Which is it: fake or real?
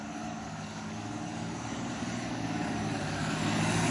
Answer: fake